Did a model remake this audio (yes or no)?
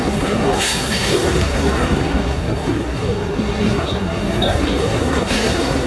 yes